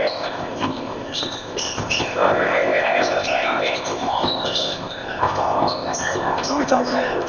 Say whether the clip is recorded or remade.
remade